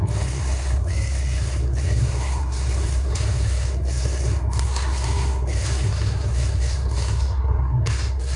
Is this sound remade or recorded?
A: remade